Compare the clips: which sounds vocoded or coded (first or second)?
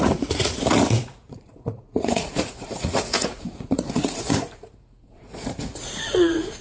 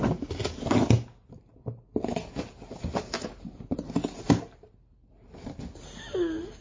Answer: first